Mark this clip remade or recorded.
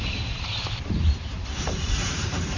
remade